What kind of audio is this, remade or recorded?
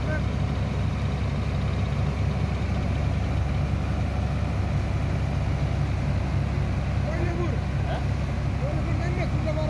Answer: recorded